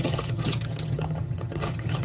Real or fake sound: fake